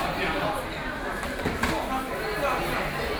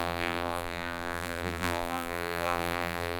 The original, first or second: first